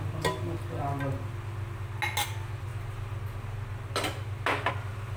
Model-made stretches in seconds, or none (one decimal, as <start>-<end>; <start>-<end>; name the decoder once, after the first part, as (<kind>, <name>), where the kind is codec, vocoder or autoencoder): none